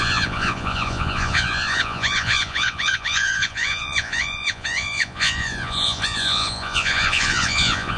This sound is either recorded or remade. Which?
remade